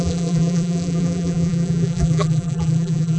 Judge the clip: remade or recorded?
remade